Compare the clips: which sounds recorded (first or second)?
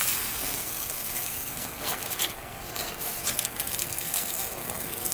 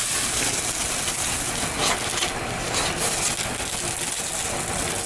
second